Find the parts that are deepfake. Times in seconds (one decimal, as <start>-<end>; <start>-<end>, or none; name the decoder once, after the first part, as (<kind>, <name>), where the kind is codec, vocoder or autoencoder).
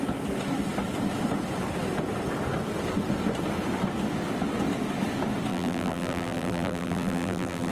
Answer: 5.5-7.7 (vocoder, BigVGAN v2)